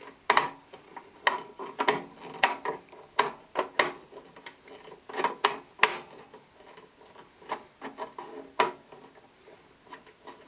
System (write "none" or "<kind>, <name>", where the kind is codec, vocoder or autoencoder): none